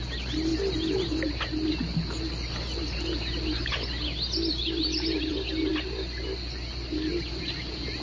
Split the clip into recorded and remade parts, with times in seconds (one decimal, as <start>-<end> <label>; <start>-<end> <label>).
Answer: 0.0-8.0 recorded